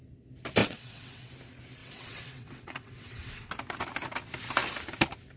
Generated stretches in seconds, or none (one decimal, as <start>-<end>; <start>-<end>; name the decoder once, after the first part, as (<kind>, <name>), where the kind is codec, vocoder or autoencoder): 0.6-1.3 (vocoder, WaveNeXt); 1.8-3.5